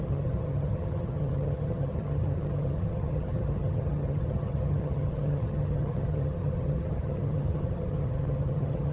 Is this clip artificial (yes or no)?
yes